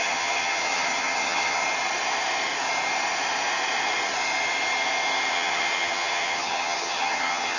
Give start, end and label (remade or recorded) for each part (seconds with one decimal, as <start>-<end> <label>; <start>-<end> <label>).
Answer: 0.0-1.6 remade; 1.6-5.3 recorded; 5.3-7.6 remade